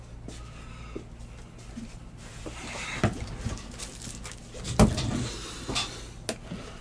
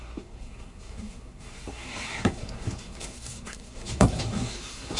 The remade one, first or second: second